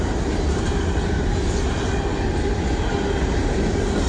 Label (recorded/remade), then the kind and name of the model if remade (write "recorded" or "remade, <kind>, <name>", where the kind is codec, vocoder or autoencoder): recorded